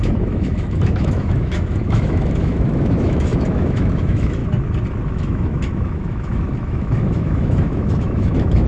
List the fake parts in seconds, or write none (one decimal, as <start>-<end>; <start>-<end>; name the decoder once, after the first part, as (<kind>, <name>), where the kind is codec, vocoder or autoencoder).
0.0-4.4 (autoencoder, DAC-VAE); 5.1-8.7